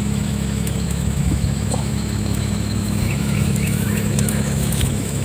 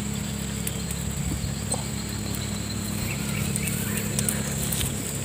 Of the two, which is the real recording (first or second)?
second